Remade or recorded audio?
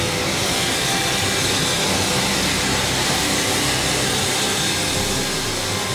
recorded